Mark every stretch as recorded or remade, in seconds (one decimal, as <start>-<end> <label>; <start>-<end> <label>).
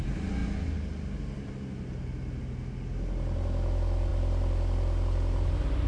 0.0-5.9 recorded